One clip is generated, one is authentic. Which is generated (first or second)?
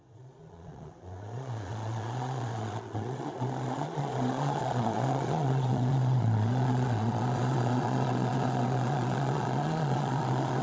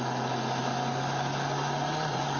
first